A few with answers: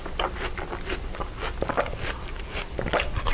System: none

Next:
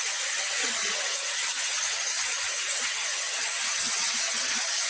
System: vocoder, HiFi-GAN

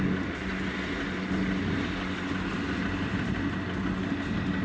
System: none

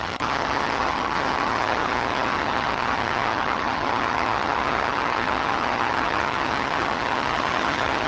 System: vocoder, HiFi-GAN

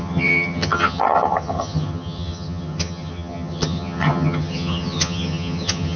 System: vocoder, HiFi-GAN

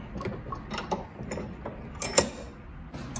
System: none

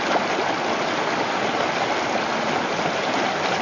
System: none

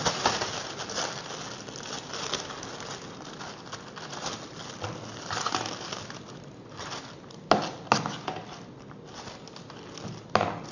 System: none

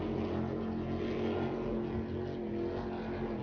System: none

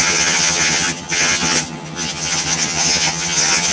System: vocoder, HiFi-GAN